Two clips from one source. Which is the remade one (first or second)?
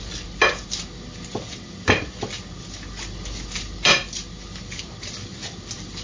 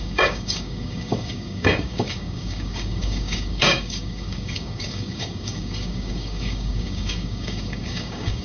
second